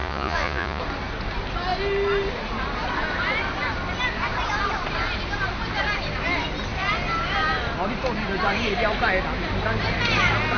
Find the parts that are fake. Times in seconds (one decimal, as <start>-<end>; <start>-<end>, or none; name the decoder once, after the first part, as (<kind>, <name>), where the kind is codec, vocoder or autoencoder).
0.0-0.8 (vocoder, Vocos)